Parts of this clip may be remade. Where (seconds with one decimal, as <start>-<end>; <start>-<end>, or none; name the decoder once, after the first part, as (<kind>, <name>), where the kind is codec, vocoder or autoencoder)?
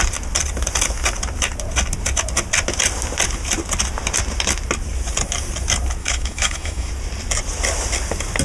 6.0-6.9 (autoencoder, DAC-VAE)